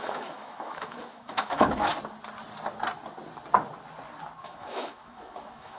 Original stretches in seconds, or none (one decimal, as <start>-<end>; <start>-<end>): 1.9-4.4

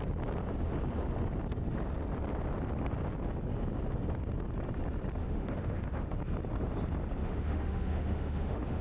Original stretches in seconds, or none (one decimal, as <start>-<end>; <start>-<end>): 0.0-5.2; 6.2-7.2

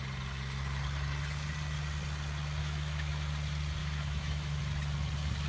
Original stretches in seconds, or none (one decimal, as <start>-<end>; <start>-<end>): 0.0-2.6; 3.1-3.8; 4.6-5.5

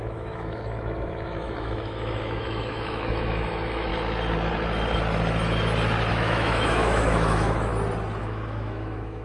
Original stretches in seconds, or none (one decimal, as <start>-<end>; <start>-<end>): 3.9-6.1; 7.7-8.2

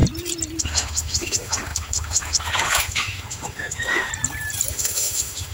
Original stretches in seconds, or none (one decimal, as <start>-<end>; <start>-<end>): 0.0-0.6; 4.1-4.7

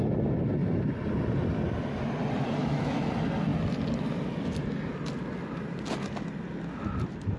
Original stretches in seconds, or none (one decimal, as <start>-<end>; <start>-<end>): 0.0-2.6; 3.1-7.4